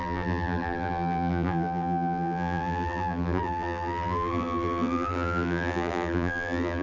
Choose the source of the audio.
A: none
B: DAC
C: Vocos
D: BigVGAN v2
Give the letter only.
D